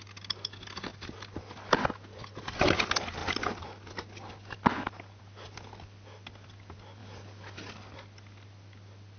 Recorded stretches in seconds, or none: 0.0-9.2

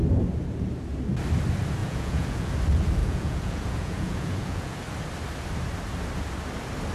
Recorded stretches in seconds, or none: 0.0-1.8; 2.5-3.0; 4.8-6.9

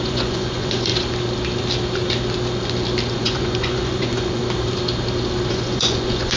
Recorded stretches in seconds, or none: 0.9-3.1; 4.4-5.5

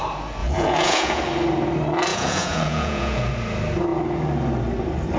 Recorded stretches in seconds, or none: 0.0-0.4; 1.2-2.1; 3.3-5.2

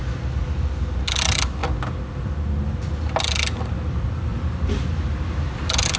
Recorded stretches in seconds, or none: 0.0-6.0

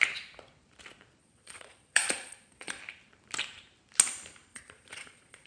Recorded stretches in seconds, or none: 0.0-1.2; 2.8-4.5